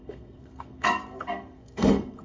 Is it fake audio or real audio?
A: fake